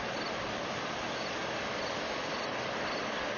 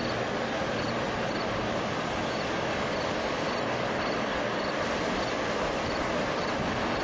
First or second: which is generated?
first